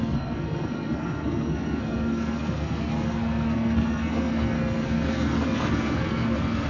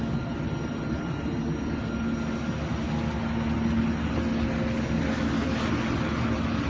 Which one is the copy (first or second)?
first